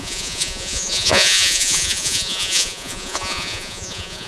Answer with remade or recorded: remade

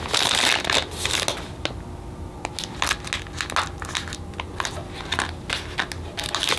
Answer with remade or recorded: recorded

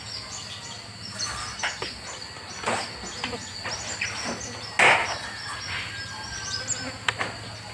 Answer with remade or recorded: recorded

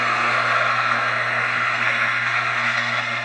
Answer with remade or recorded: remade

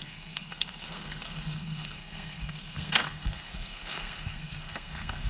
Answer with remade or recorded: remade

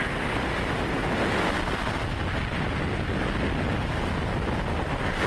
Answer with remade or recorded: recorded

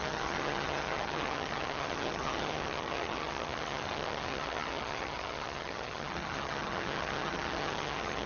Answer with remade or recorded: remade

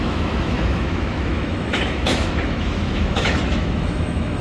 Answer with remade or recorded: remade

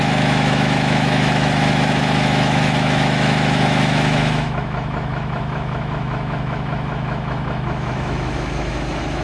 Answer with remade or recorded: remade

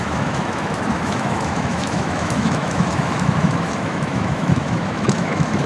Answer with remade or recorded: remade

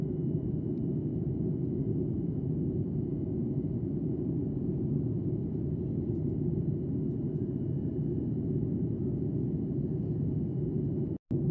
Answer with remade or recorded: recorded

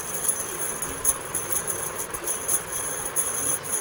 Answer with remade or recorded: recorded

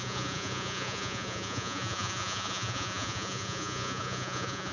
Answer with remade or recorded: remade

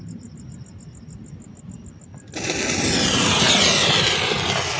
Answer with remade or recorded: recorded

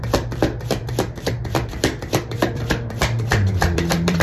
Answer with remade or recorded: remade